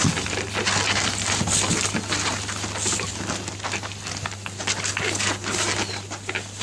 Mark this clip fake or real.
real